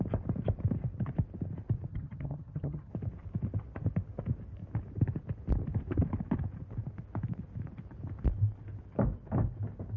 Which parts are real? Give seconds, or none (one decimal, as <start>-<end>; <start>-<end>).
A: 0.0-1.9; 2.9-10.0